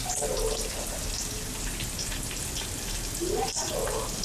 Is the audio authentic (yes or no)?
yes